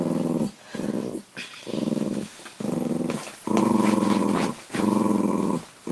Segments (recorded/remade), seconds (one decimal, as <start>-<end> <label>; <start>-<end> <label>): 0.0-5.9 recorded